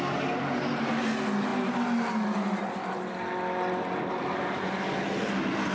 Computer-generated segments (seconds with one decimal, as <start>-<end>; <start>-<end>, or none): none